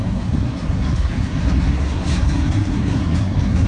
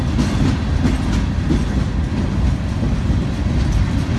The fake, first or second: first